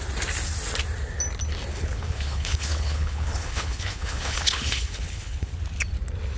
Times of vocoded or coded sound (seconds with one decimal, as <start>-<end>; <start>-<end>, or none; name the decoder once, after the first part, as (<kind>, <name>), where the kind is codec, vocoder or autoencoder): 1.7-5.5 (codec, HILCodec)